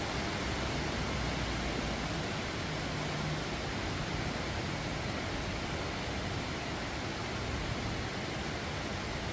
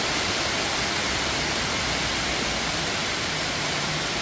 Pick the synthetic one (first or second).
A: second